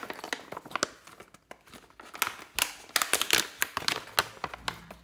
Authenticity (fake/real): real